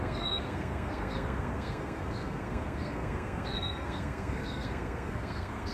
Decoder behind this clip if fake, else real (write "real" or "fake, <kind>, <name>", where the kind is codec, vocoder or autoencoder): fake, codec, SNAC